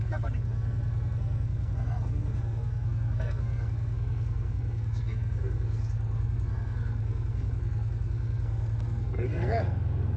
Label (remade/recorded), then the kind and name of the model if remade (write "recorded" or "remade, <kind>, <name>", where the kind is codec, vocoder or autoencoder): remade, codec, SNAC